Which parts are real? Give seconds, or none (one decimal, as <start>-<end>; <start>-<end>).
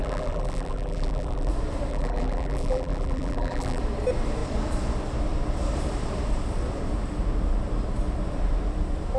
1.5-1.9; 3.8-9.2